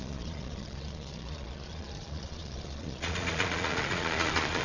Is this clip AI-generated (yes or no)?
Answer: yes